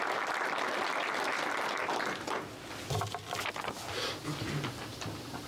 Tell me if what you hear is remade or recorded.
recorded